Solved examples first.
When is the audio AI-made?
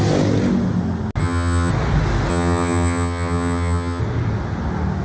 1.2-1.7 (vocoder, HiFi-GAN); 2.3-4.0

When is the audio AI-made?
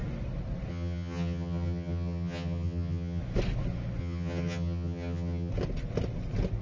0.7-3.2 (vocoder, HiFi-GAN); 4.0-5.5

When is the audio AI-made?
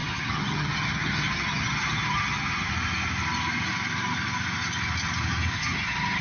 0.0-2.7 (vocoder, HiFi-GAN); 5.5-6.2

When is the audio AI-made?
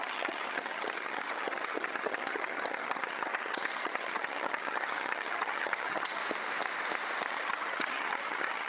0.0-6.2 (vocoder, HiFi-GAN); 7.3-8.7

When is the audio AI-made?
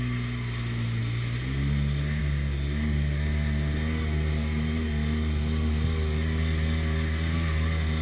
none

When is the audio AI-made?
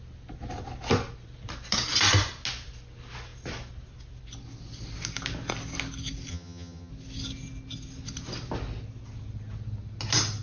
6.3-6.9 (vocoder, HiFi-GAN)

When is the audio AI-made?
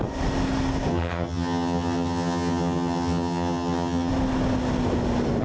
0.9-4.1 (vocoder, HiFi-GAN)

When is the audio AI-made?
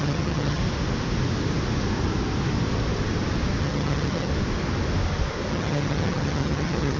0.0-0.6 (vocoder, HiFi-GAN); 3.6-4.3; 5.5-7.0